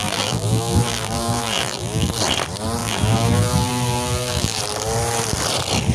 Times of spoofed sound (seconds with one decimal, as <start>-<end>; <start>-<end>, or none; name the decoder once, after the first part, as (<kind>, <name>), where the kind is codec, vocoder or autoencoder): 0.0-2.1 (vocoder, BigVGAN v2); 2.8-4.6